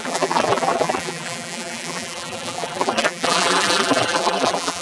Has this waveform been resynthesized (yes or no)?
yes